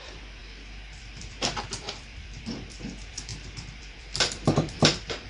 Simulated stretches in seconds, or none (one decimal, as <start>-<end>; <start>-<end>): 0.0-0.4; 1.0-5.3